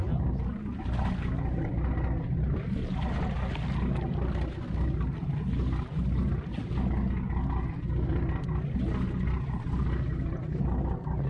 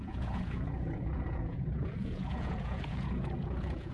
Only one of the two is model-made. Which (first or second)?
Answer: second